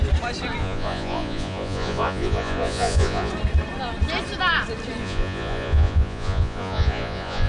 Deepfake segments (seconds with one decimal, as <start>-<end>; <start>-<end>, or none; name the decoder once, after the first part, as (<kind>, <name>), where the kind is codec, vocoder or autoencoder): 0.6-3.3 (vocoder, Vocos); 5.0-7.5